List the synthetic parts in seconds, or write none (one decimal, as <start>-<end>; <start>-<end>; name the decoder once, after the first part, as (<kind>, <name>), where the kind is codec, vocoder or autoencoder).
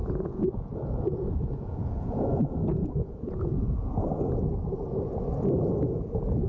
0.0-3.9 (vocoder, Vocos)